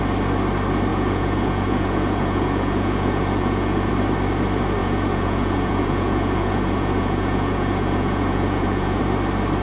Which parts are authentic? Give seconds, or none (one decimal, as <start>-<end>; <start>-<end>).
0.0-0.9; 3.9-4.8; 9.0-9.6